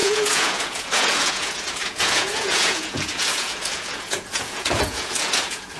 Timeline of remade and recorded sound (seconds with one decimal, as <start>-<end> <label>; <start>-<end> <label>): 0.0-5.8 remade